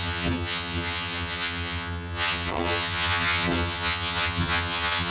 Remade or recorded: remade